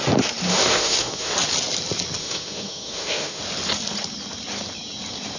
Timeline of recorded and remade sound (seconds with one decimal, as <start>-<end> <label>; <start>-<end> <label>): 0.0-0.5 recorded; 0.5-1.3 remade; 1.3-2.2 recorded; 2.2-3.4 remade; 3.4-5.4 recorded